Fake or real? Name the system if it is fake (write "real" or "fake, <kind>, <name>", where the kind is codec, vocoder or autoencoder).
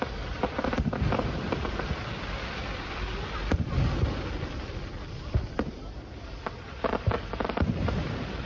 fake, vocoder, BigVGAN v2